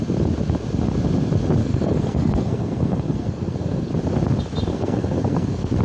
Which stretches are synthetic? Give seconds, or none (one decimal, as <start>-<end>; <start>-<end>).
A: 1.6-3.9; 4.7-5.8